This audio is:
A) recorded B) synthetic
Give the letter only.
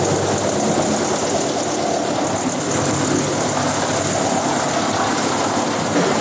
A